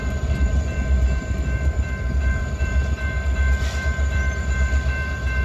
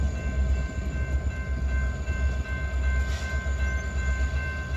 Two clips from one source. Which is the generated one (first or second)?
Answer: first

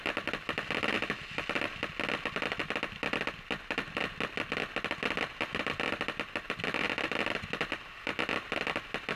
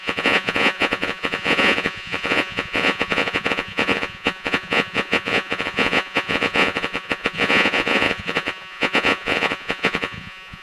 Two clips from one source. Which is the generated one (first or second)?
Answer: second